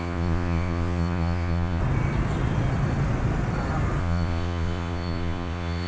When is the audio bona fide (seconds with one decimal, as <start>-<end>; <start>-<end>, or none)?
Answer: 1.8-4.0